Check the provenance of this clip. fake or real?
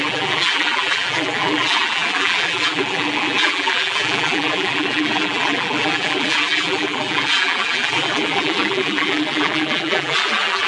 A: fake